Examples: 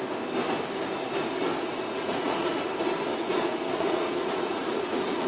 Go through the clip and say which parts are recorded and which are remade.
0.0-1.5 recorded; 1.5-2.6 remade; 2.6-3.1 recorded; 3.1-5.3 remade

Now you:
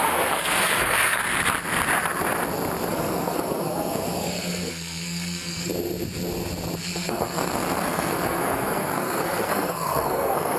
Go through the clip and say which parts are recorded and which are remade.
0.0-1.2 remade; 1.2-2.9 recorded; 2.9-5.7 remade; 5.7-6.8 recorded; 6.8-10.6 remade

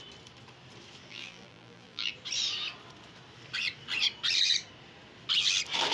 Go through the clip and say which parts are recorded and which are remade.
0.0-1.1 recorded; 1.1-2.1 remade; 2.1-5.9 recorded

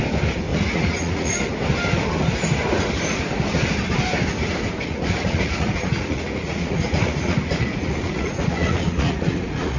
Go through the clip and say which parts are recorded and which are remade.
0.0-0.5 recorded; 0.5-1.4 remade; 1.4-4.8 recorded; 4.8-9.8 remade